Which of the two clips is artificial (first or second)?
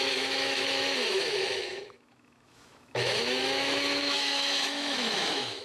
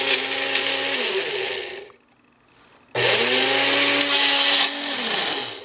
first